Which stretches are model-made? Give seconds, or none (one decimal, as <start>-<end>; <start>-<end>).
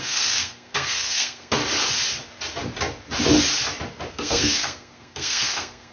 0.0-1.6; 4.1-5.9